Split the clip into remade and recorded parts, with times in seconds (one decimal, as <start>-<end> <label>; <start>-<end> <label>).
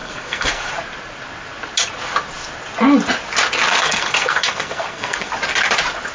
0.0-0.7 remade; 0.7-3.7 recorded; 3.7-5.3 remade; 5.3-6.1 recorded